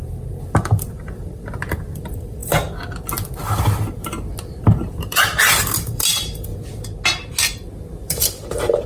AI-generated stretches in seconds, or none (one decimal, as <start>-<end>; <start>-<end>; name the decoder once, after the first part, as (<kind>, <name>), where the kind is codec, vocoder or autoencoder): 0.0-2.4 (vocoder, BigVGAN v2); 4.4-6.5; 8.0-8.9